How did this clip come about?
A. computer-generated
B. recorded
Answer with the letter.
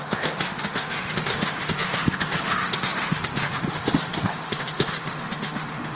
A